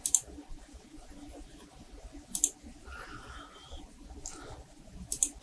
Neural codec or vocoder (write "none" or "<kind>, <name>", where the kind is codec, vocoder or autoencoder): none